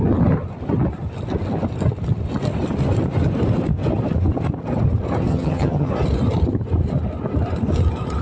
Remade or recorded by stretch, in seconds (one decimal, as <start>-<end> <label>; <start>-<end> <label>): 0.0-5.3 recorded; 5.3-5.9 remade; 5.9-8.2 recorded